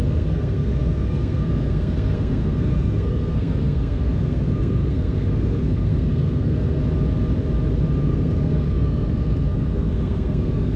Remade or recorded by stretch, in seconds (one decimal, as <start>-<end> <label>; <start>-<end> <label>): 0.0-6.8 remade; 6.8-8.0 recorded; 8.0-10.8 remade